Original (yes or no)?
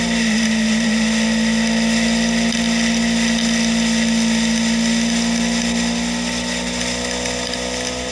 yes